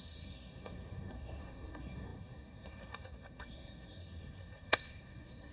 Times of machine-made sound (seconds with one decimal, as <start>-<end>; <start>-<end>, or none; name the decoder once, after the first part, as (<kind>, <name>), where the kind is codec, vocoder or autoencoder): 0.0-5.5 (codec, SNAC)

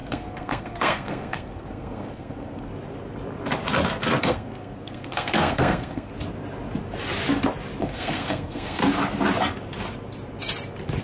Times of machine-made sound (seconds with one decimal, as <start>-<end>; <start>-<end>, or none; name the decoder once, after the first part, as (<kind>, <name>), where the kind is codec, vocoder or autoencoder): 0.0-2.7 (codec, SNAC); 4.2-6.1; 7.8-8.8

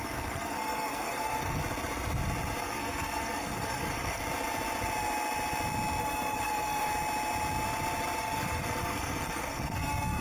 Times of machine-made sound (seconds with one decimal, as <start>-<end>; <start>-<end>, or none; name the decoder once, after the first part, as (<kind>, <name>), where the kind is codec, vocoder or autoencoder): 0.0-1.6 (codec, SNAC); 2.6-4.2; 6.0-6.9; 8.2-10.2

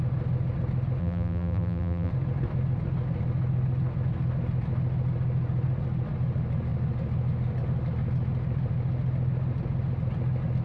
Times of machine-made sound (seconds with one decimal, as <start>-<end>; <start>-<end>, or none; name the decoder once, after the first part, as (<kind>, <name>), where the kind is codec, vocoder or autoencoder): 1.0-2.1 (vocoder, BigVGAN v2)

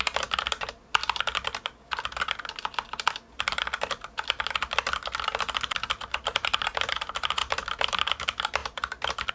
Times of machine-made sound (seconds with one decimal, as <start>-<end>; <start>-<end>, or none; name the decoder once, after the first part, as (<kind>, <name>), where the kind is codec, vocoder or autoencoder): 0.0-1.0 (vocoder, BigVGAN v2); 6.1-9.3

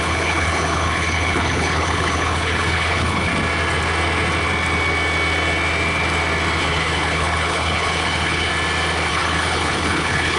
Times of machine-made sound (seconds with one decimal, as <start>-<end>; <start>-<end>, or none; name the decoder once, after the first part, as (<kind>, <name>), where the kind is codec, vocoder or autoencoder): 0.0-3.3 (codec, HILCodec); 6.6-8.5; 9.1-10.4

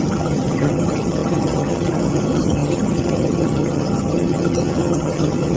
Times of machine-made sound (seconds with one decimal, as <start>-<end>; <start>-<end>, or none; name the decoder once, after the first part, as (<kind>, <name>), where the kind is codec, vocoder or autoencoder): 0.0-5.6 (vocoder, HiFi-GAN)